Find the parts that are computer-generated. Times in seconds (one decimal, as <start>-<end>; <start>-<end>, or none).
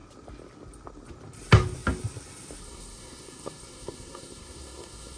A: 2.6-5.2